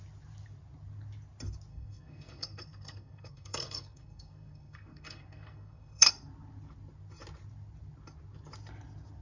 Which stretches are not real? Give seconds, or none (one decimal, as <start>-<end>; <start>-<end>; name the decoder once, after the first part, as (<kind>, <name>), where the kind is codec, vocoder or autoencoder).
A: 1.7-6.1 (codec, SNAC)